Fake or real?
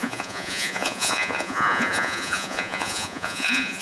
fake